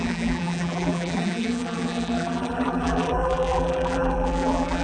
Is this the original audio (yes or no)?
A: no